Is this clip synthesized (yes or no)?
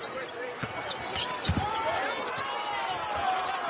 no